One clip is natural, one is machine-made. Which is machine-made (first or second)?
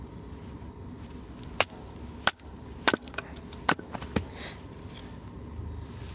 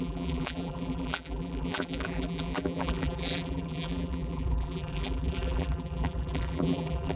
second